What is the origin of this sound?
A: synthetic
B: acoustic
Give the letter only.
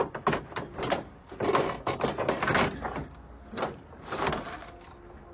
B